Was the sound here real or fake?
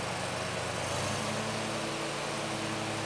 real